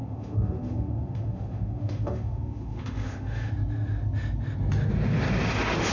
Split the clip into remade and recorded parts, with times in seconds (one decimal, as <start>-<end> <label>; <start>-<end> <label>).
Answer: 0.0-3.5 remade; 3.5-5.9 recorded